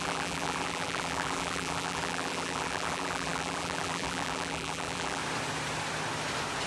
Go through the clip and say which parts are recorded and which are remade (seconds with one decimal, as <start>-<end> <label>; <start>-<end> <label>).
0.0-5.2 remade; 5.2-6.7 recorded